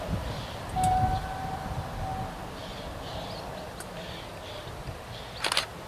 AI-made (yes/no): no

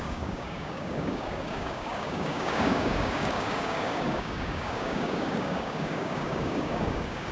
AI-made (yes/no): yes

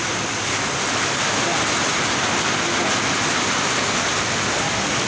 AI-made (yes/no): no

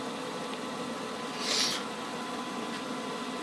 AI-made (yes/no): no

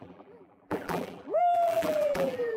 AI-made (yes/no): yes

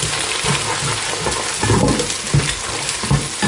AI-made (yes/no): no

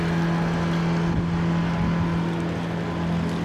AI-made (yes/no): no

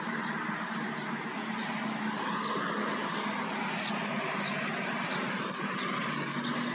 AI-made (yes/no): no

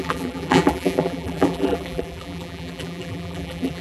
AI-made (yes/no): yes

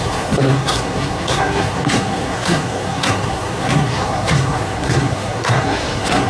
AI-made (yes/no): yes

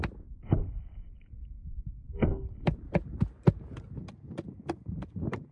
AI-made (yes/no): no